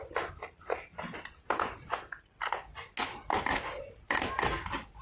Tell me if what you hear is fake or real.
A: real